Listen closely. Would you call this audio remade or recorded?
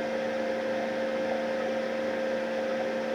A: recorded